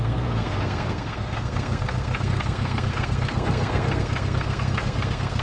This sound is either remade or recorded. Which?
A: remade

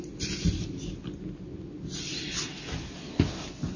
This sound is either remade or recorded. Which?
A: recorded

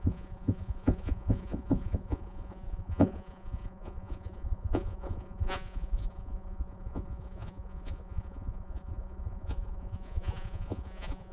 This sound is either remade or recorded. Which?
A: remade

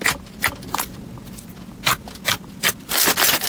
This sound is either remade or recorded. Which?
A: recorded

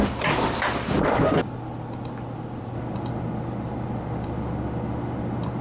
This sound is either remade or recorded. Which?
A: remade